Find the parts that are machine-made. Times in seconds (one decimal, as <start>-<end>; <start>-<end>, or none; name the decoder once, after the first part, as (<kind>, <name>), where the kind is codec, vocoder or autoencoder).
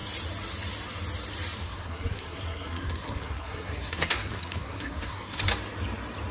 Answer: 1.6-5.4 (codec, SNAC)